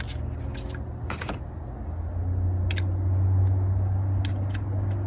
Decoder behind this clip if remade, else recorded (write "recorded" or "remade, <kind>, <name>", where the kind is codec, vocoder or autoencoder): recorded